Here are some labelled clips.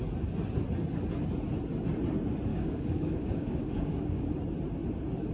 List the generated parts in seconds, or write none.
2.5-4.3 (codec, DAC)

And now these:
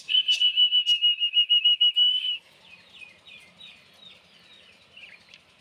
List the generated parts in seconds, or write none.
1.2-2.6 (codec, DAC)

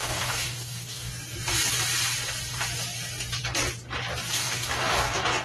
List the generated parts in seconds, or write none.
0.0-1.1 (codec, DAC); 4.3-5.4

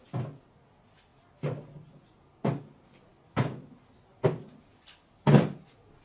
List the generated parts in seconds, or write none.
none

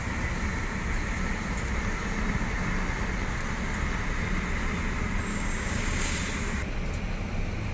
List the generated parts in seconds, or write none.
5.3-6.2 (codec, DAC)

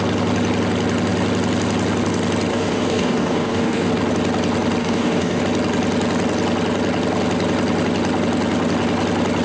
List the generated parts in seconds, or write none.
2.5-3.9 (codec, DAC); 4.8-5.4